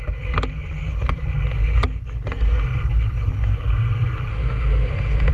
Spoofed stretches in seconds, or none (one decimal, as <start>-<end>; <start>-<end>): 4.3-5.3